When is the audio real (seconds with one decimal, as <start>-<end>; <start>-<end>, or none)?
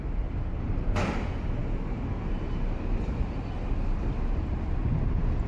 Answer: 0.0-5.5